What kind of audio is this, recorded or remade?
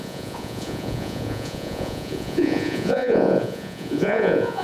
remade